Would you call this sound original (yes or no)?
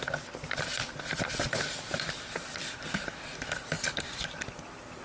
no